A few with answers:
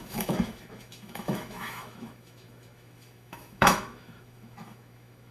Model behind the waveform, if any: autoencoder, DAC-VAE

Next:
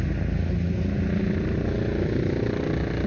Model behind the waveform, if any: none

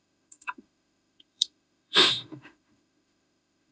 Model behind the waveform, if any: autoencoder, DAC-VAE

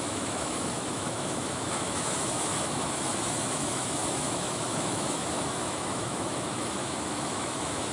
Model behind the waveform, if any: autoencoder, DAC-VAE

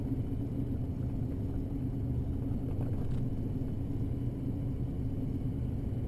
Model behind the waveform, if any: none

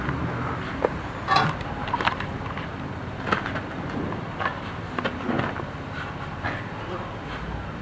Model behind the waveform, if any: none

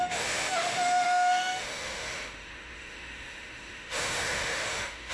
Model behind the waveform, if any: autoencoder, DAC-VAE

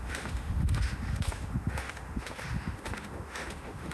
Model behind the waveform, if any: autoencoder, DAC-VAE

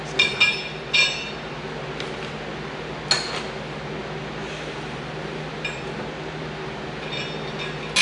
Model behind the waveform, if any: none